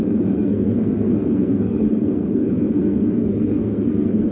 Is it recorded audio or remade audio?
remade